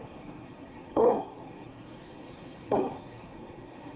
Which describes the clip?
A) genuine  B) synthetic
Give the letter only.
B